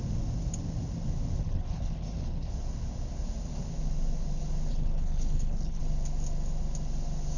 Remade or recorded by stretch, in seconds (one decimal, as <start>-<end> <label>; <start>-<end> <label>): 0.0-1.4 recorded; 1.4-2.5 remade; 2.5-4.7 recorded; 4.7-5.8 remade; 5.8-7.4 recorded